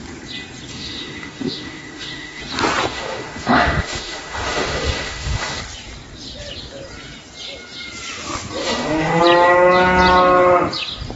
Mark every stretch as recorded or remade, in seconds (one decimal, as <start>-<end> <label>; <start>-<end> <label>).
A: 0.0-0.7 recorded; 0.7-2.4 remade; 2.4-2.9 recorded; 2.9-5.6 remade; 5.6-8.6 recorded; 8.6-9.2 remade; 9.2-11.2 recorded